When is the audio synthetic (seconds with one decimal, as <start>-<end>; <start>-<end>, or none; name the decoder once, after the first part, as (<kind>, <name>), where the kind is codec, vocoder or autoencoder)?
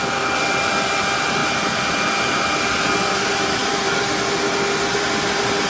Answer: none